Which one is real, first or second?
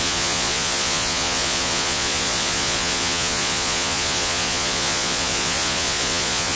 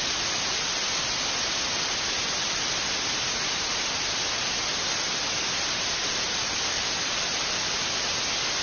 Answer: second